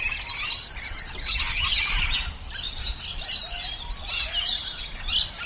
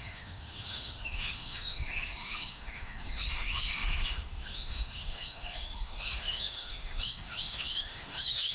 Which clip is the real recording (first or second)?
first